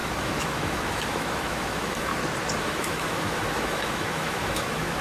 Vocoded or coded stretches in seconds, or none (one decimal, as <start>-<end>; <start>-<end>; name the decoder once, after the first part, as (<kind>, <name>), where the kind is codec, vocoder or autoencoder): 0.0-2.1 (autoencoder, DAC-VAE); 2.6-5.0